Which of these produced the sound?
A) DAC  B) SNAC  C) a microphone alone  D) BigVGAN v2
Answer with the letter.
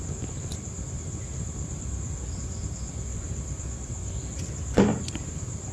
D